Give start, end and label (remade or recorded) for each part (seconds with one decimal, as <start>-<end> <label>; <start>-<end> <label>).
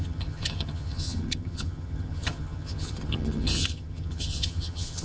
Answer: 0.0-5.0 remade